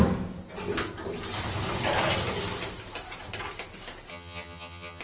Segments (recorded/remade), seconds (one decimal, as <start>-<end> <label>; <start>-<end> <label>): 0.0-4.1 recorded; 4.1-5.0 remade